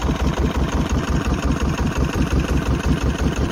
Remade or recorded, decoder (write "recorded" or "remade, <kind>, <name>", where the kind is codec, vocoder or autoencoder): remade, vocoder, BigVGAN v2